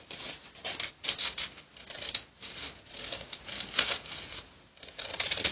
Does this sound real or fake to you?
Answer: real